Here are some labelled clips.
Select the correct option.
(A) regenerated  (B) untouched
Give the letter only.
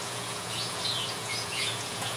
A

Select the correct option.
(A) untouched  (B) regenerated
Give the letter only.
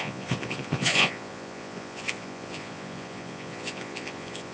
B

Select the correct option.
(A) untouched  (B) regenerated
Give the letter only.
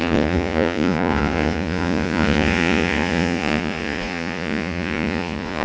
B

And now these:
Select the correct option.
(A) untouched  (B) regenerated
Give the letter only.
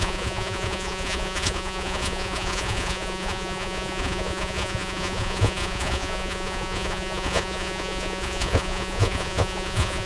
B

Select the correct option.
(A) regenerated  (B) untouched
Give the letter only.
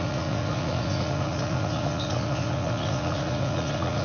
A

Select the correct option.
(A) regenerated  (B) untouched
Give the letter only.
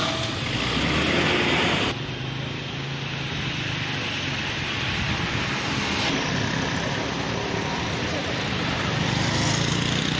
B